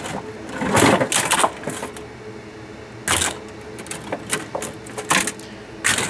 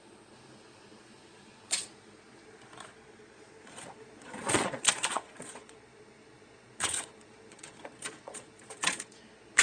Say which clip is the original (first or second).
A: first